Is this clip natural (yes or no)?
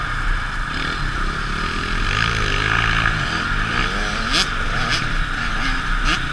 yes